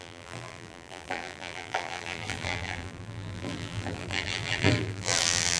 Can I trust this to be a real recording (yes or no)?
no